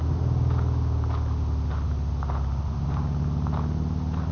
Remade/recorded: recorded